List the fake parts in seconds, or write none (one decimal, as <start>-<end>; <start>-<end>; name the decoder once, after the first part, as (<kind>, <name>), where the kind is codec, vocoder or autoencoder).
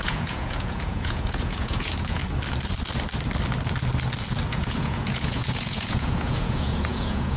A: 0.0-2.2 (vocoder, Vocos); 4.5-7.4